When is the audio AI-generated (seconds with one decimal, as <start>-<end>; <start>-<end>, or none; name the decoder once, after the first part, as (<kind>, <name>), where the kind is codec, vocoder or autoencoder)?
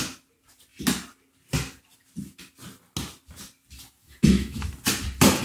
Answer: 4.0-4.7 (autoencoder, DAC-VAE)